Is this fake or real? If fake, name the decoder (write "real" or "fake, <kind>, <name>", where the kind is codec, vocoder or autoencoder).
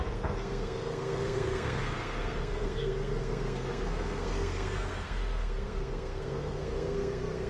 fake, codec, SNAC